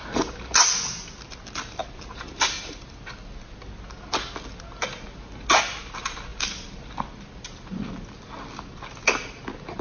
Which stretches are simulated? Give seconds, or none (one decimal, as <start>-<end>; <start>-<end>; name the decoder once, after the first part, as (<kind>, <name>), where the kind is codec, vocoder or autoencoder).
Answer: 1.8-3.3 (vocoder, BigVGAN v2)